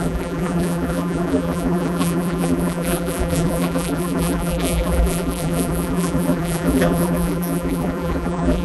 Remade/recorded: remade